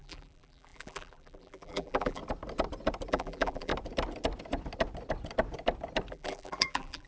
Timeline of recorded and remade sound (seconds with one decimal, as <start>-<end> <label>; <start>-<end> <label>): 0.0-2.2 remade; 2.2-3.1 recorded; 3.1-3.7 remade; 3.7-6.1 recorded; 6.1-7.1 remade